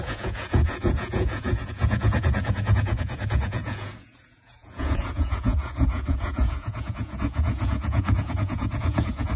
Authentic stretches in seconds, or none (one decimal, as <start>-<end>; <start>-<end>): none